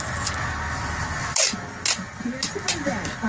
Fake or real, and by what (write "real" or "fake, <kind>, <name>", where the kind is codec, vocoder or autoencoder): real